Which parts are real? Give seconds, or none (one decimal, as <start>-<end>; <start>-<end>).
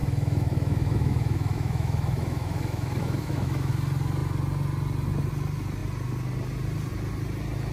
3.7-7.7